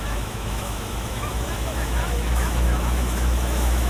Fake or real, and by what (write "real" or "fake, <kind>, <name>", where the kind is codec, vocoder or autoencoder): fake, autoencoder, DAC-VAE